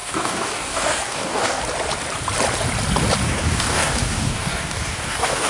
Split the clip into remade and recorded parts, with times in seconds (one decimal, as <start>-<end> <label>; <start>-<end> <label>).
0.0-1.6 remade; 1.6-3.2 recorded; 3.2-5.5 remade